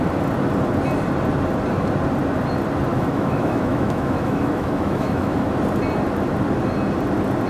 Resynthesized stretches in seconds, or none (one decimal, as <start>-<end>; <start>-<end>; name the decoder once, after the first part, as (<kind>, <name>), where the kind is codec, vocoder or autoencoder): 2.9-5.5 (autoencoder, DAC-VAE)